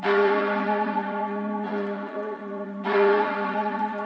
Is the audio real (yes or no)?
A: no